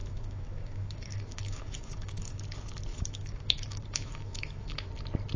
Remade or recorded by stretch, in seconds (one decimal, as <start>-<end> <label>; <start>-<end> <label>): 0.0-2.4 remade; 2.4-2.9 recorded; 2.9-4.9 remade; 4.9-5.4 recorded